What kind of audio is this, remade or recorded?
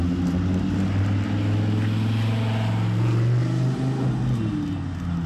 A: recorded